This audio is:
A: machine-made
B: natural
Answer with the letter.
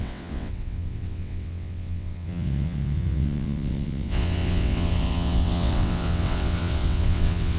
A